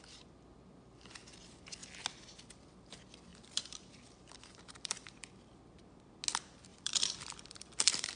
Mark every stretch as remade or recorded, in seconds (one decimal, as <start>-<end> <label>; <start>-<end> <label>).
0.0-3.3 recorded; 3.3-5.3 remade; 5.3-6.7 recorded; 6.7-8.2 remade